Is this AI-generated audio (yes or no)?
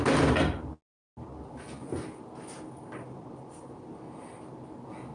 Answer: no